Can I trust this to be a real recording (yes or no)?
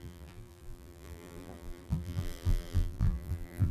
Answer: no